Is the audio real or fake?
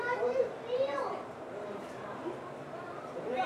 fake